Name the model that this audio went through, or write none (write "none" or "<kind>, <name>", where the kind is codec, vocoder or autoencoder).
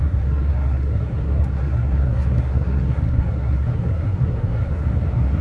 codec, SNAC